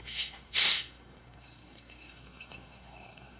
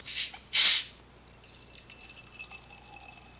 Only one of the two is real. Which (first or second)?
second